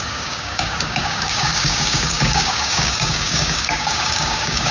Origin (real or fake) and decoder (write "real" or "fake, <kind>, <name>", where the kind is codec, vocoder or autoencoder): fake, codec, DAC